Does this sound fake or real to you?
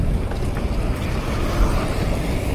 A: real